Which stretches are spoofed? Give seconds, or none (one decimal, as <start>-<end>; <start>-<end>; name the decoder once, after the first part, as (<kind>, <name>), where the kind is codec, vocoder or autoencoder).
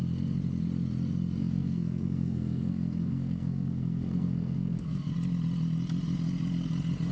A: 1.4-5.1 (codec, SNAC)